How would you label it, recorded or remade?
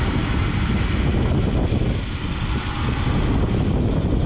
recorded